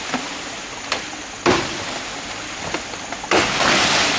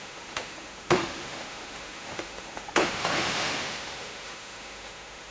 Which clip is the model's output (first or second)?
second